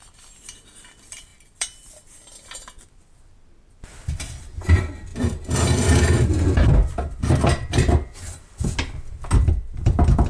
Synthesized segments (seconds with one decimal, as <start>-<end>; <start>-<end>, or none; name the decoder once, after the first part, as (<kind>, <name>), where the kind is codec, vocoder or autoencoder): 0.0-5.1 (vocoder, BigVGAN v2); 6.3-6.8; 9.7-10.3